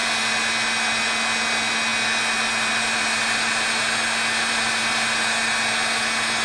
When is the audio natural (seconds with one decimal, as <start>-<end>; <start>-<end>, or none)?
0.0-6.4